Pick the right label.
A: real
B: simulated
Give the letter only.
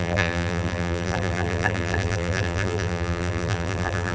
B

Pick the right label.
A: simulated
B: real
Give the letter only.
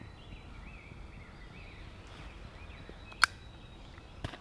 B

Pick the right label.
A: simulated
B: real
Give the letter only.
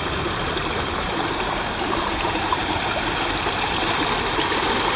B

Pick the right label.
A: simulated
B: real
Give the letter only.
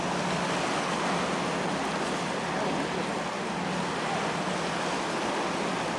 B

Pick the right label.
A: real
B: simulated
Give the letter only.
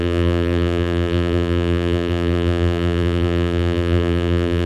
B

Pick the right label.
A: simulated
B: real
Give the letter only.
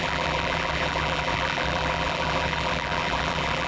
A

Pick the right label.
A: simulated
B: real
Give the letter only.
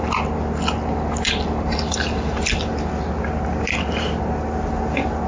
B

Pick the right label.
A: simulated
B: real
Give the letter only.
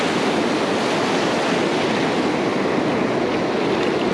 B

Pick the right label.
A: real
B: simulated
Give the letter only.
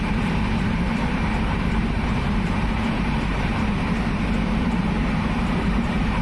B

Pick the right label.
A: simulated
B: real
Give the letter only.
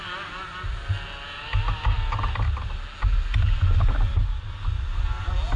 B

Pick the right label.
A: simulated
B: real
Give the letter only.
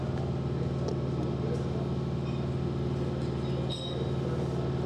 B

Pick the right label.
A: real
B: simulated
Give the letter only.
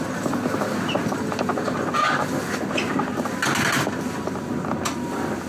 A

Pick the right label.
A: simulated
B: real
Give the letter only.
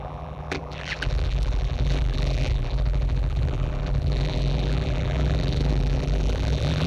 A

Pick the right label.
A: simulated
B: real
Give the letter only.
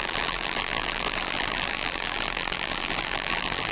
A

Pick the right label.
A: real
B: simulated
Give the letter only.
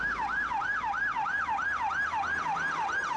A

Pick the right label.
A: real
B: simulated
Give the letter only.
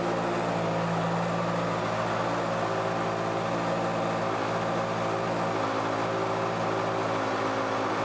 A